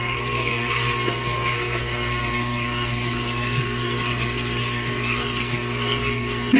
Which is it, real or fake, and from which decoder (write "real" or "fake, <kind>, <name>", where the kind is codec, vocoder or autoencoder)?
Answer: fake, codec, SNAC